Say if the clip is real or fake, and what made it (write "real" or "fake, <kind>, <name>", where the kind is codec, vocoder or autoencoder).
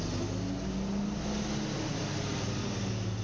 real